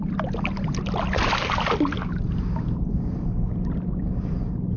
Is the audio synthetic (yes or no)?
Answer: no